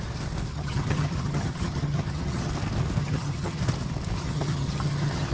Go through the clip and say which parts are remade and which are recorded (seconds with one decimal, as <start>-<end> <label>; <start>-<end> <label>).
0.0-0.5 recorded; 0.5-2.5 remade; 2.5-3.0 recorded; 3.0-3.6 remade; 3.6-4.2 recorded; 4.2-5.3 remade